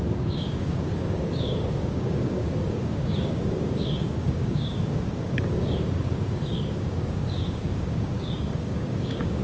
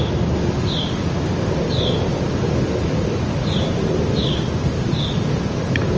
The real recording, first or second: second